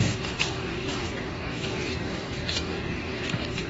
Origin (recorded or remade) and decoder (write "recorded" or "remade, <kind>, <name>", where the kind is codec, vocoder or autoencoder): remade, codec, DAC